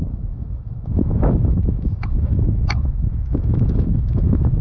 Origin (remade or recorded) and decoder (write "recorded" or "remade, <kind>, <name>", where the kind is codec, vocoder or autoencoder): remade, autoencoder, DAC-VAE